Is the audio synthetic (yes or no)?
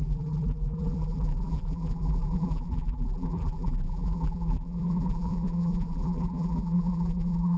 yes